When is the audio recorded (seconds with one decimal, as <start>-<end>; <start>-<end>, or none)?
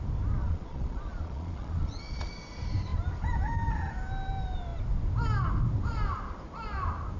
0.0-0.4; 2.4-7.2